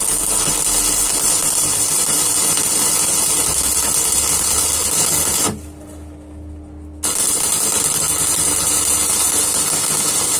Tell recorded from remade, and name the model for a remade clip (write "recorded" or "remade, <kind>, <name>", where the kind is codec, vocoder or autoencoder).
recorded